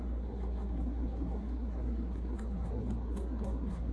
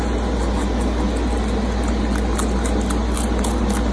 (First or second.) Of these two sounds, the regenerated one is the first